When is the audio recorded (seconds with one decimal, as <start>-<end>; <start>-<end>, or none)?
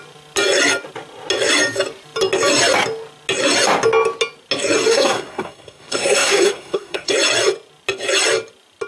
0.0-4.9; 7.1-8.9